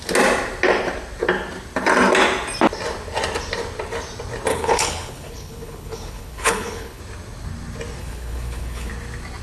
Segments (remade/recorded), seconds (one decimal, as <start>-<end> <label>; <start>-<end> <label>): 0.0-4.5 recorded; 4.5-7.0 remade; 7.0-8.0 recorded; 8.0-8.9 remade; 8.9-9.4 recorded